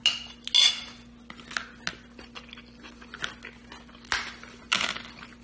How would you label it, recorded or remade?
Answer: recorded